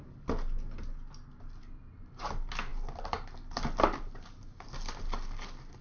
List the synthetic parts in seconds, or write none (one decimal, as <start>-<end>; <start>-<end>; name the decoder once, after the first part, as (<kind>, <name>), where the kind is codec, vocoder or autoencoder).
none